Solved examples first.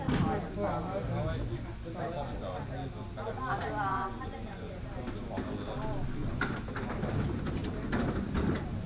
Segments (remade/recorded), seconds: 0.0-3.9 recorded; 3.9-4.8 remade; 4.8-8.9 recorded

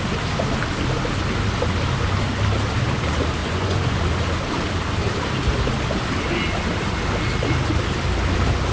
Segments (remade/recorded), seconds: 0.0-3.4 recorded; 3.4-4.0 remade; 4.0-8.7 recorded

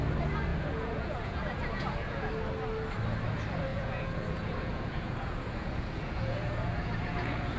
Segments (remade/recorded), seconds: 0.0-0.5 recorded; 0.5-2.3 remade; 2.3-3.7 recorded; 3.7-7.6 remade

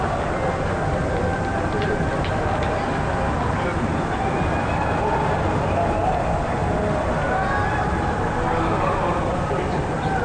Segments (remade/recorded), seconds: 0.0-10.2 recorded